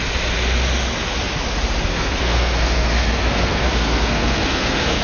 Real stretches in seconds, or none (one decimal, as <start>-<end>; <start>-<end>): 0.0-1.9